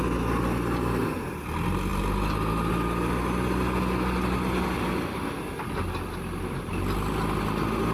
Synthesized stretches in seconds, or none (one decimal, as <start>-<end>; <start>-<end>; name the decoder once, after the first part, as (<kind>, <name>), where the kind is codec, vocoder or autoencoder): none